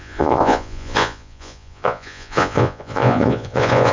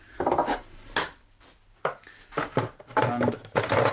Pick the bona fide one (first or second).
second